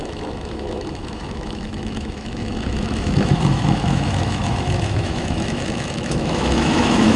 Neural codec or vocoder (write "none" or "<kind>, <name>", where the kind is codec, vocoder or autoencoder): autoencoder, DAC-VAE